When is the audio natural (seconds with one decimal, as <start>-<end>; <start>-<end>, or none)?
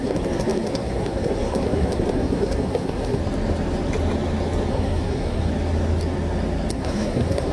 3.2-4.7; 5.5-6.7